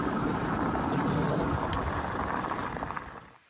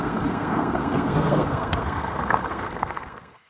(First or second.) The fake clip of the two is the second